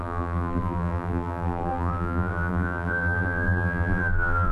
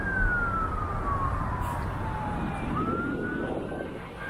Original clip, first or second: second